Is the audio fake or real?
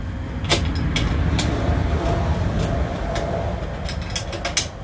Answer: real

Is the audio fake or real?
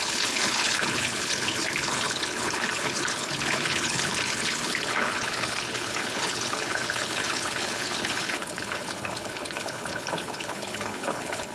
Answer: fake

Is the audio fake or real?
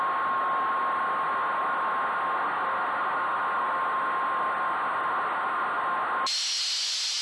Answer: real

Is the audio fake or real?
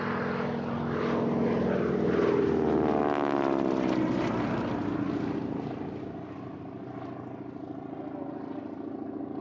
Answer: real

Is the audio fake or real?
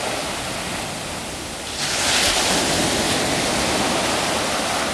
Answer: real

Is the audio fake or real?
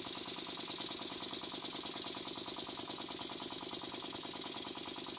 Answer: real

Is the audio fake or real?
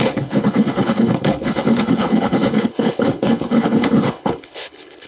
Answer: fake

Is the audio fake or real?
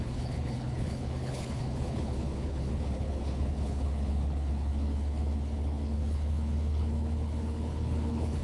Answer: fake